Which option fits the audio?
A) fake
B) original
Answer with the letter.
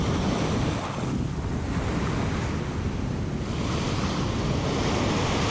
B